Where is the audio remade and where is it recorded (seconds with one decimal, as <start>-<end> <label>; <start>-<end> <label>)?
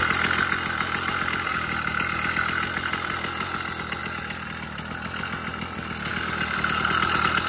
0.0-7.5 recorded